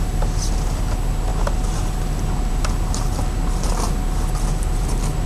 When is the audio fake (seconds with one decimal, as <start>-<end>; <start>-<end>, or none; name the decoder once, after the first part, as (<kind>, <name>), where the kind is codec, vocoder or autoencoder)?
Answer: none